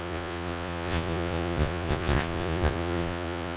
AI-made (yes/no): yes